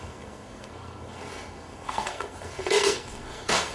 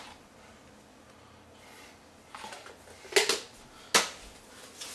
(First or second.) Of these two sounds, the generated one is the first